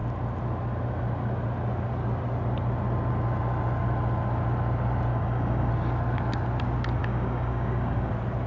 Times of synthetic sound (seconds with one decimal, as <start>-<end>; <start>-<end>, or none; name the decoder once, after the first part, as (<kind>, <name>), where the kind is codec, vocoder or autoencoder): 5.1-5.7 (codec, DAC); 7.0-8.1